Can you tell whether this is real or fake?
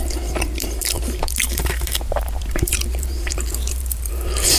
fake